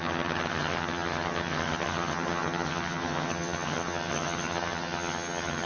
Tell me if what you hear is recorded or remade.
remade